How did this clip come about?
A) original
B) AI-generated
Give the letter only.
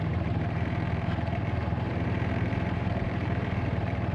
B